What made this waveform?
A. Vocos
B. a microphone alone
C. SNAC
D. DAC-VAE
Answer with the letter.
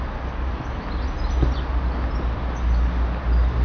B